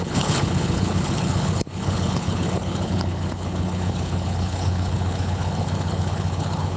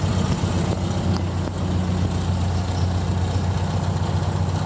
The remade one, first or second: first